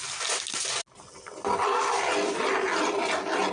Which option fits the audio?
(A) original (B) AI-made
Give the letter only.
A